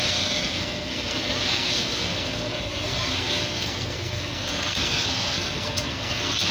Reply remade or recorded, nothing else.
remade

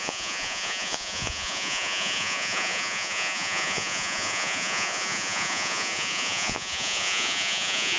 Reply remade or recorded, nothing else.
remade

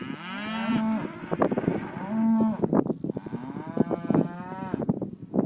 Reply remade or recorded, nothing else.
recorded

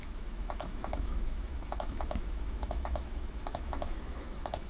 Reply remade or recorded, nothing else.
remade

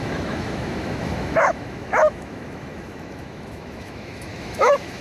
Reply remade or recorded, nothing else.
remade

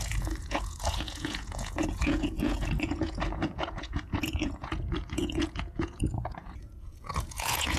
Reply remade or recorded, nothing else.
remade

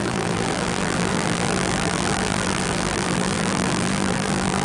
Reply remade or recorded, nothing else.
remade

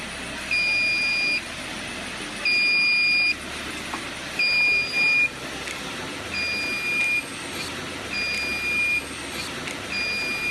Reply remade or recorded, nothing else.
recorded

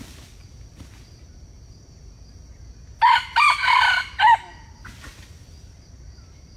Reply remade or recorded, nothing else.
recorded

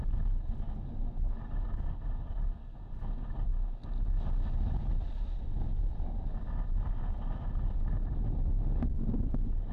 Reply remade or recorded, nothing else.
recorded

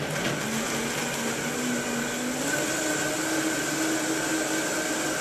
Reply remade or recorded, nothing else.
recorded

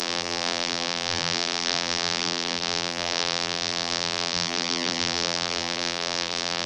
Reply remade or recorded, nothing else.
remade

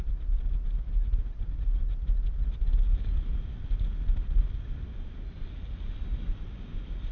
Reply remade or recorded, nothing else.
recorded